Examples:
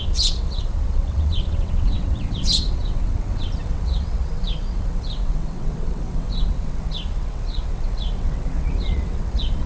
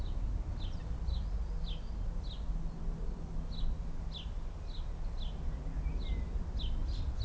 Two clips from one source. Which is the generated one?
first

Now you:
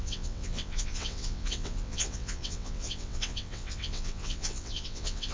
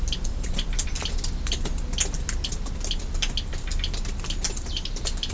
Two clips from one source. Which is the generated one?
first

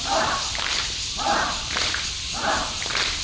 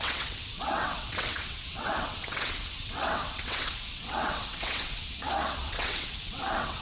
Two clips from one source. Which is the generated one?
second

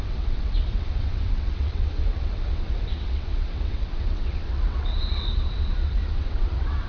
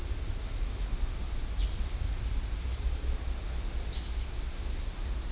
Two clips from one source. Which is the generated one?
first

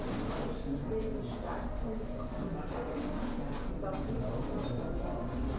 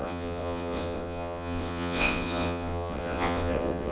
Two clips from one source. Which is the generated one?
second